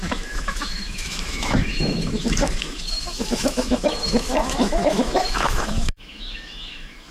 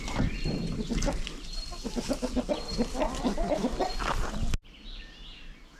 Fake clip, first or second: first